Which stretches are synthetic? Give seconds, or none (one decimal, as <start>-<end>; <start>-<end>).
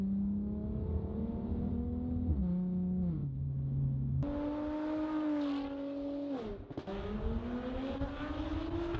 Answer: 3.2-4.2